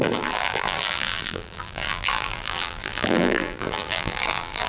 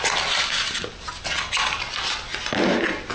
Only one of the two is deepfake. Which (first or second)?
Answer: first